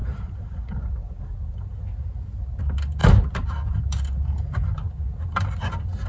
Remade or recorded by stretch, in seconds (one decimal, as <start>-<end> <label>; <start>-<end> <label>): 0.0-6.1 recorded